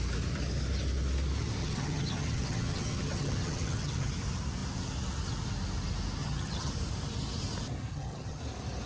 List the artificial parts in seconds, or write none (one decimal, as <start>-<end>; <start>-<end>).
1.6-4.1; 6.2-6.7; 7.9-8.4